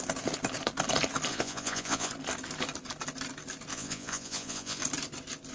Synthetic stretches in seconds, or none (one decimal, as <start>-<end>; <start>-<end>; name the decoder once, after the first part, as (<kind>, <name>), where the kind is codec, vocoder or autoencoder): 1.3-2.1 (vocoder, Vocos); 3.7-4.8